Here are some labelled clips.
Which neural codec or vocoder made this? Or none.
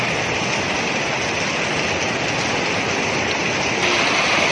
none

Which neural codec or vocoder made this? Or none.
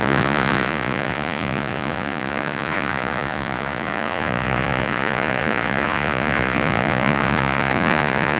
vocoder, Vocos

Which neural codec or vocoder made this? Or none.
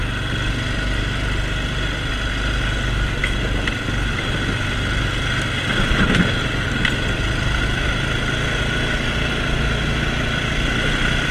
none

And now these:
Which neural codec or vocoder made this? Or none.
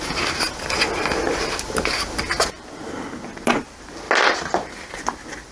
none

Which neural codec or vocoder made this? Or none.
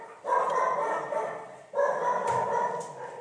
none